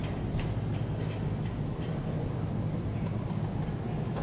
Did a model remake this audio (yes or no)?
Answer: no